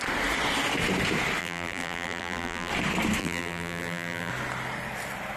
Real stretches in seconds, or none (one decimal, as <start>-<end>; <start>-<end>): 0.0-1.4; 2.7-3.2; 4.3-5.4